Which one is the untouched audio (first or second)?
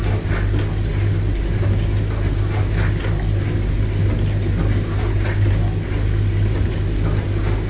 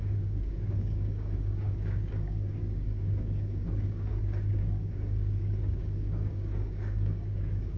first